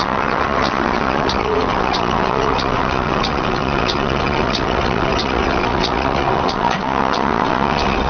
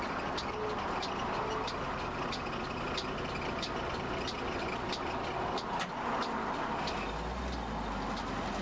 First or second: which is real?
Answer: second